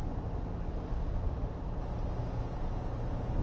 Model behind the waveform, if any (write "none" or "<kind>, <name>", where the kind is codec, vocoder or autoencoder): none